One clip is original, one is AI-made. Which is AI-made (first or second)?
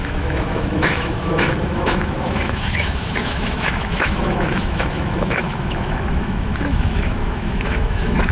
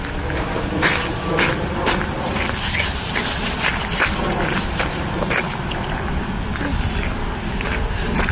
first